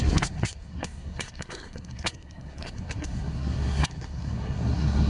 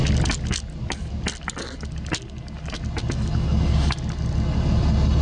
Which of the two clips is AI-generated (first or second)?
first